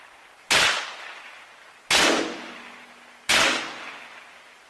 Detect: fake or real real